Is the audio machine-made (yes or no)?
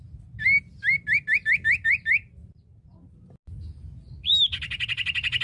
no